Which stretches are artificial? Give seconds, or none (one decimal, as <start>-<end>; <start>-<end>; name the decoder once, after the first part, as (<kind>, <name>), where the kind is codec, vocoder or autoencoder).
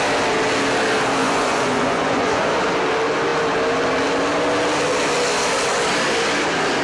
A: 1.2-2.5 (vocoder, Vocos)